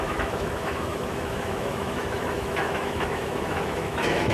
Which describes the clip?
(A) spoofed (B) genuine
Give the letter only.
A